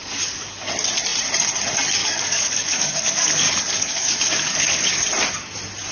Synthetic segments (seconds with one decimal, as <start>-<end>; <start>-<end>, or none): 0.0-0.7; 2.0-5.0